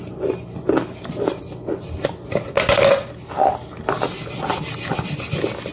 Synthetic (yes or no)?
no